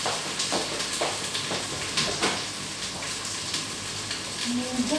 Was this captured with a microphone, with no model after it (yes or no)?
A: yes